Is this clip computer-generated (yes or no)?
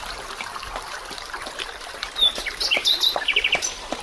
yes